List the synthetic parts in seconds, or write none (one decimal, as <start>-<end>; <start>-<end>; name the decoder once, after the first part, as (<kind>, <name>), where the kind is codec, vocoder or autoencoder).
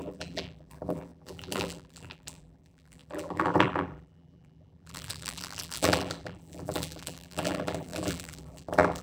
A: 0.0-9.0 (vocoder, BigVGAN v2)